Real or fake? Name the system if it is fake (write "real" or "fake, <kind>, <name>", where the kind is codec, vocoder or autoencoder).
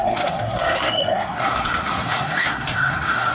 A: fake, codec, SNAC